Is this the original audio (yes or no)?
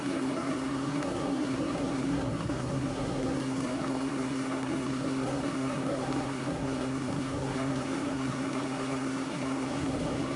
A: no